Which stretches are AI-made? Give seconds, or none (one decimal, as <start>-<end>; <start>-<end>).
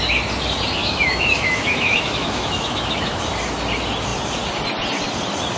0.8-3.2